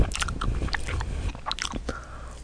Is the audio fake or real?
real